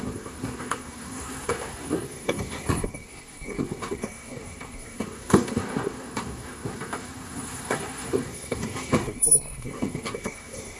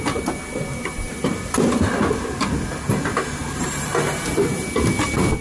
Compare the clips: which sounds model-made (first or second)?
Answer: first